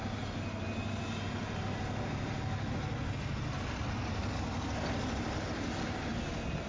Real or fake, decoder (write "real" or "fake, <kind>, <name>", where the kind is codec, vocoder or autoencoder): real